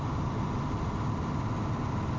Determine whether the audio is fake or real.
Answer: real